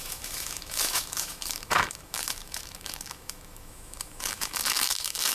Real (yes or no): no